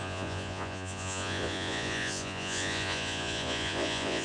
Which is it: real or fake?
fake